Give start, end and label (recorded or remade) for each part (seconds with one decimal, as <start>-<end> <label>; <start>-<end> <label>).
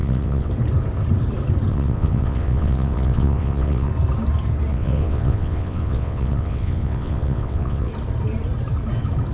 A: 0.0-0.5 remade; 0.5-1.7 recorded; 1.7-3.9 remade; 3.9-4.7 recorded; 4.7-7.9 remade; 7.9-9.3 recorded